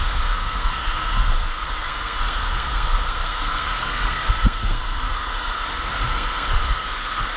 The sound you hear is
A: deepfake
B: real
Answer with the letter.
A